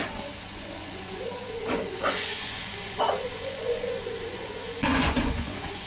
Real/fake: fake